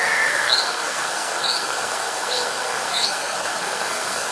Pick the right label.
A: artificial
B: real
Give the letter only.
A